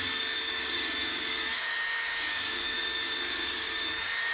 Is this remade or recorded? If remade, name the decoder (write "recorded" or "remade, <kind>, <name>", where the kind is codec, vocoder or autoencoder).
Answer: remade, codec, DAC